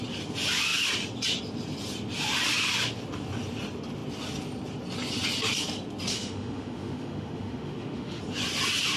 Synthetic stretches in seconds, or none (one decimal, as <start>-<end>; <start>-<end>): 6.1-8.2